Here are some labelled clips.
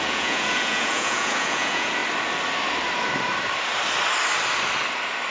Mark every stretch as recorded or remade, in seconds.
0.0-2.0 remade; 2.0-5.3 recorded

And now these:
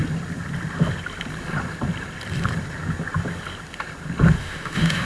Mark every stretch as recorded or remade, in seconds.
0.0-4.4 recorded; 4.4-5.1 remade

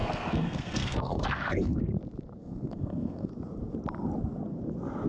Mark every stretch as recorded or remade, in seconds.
0.0-1.8 remade; 1.8-2.4 recorded; 2.4-3.3 remade; 3.3-5.1 recorded

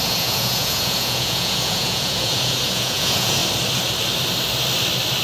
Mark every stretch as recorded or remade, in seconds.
0.0-3.4 remade; 3.4-5.2 recorded

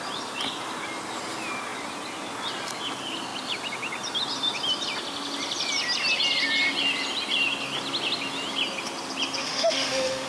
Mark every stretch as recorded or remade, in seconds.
0.0-9.4 recorded; 9.4-10.3 remade

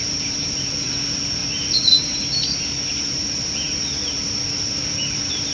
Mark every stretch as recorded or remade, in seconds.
0.0-1.4 remade; 1.4-2.9 recorded; 2.9-5.5 remade

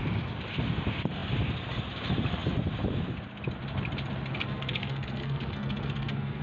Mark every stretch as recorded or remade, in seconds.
0.0-4.3 recorded; 4.3-6.4 remade

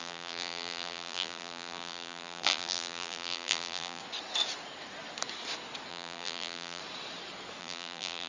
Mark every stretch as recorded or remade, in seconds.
0.0-4.0 remade; 4.0-5.9 recorded; 5.9-6.8 remade; 6.8-7.6 recorded; 7.6-8.3 remade